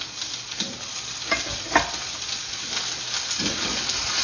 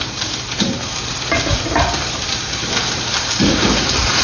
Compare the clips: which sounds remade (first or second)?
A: second